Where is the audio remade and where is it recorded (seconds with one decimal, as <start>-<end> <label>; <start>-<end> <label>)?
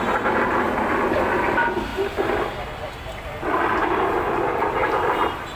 0.0-1.9 recorded; 1.9-5.6 remade